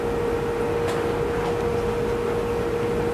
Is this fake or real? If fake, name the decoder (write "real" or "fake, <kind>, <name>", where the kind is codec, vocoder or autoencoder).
real